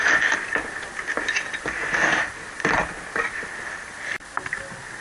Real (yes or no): no